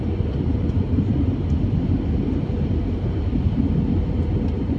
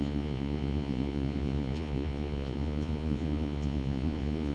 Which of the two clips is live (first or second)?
first